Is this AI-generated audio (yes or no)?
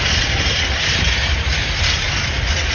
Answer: no